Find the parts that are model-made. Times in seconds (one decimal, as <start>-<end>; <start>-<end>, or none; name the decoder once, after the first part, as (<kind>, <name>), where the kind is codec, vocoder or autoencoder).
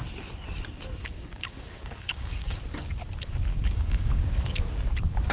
1.0-2.6 (codec, DAC); 3.5-4.5